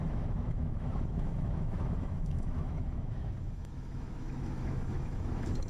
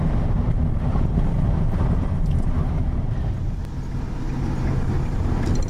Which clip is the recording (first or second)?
second